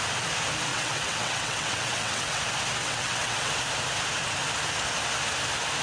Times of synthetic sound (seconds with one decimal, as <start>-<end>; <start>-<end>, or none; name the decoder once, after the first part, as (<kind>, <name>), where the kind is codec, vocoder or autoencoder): 0.7-2.4 (vocoder, WaveNeXt); 2.8-3.5